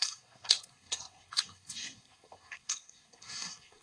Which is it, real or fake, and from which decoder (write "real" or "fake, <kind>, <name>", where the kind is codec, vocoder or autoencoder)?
fake, codec, SNAC